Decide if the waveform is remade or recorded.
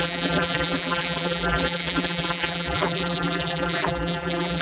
remade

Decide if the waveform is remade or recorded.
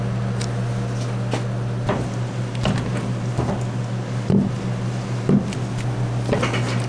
recorded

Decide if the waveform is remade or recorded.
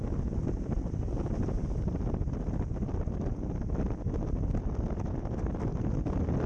recorded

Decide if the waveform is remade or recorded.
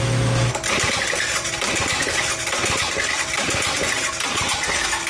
recorded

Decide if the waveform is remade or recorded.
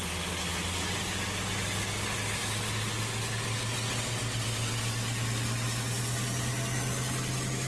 recorded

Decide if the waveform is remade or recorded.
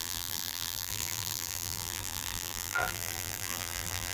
remade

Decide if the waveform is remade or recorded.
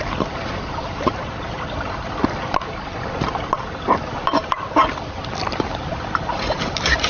remade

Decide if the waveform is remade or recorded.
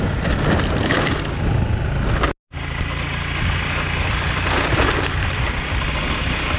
recorded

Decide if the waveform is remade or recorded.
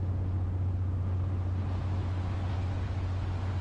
recorded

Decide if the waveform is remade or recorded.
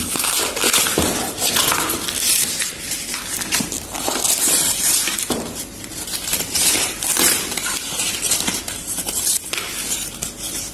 remade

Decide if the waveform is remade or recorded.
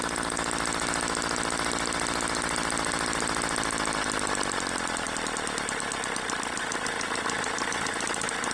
recorded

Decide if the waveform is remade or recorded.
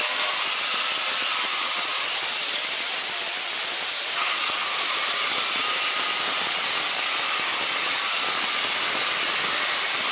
recorded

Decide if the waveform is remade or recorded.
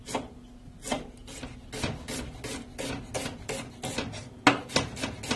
recorded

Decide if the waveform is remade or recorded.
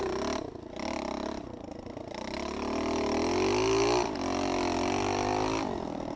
recorded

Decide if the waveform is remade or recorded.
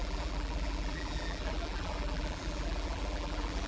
remade